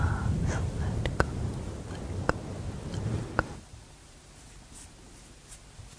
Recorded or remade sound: recorded